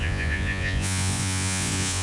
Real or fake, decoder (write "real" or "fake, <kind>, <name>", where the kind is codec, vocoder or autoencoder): fake, vocoder, Vocos